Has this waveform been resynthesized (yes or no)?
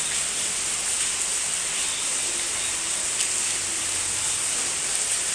no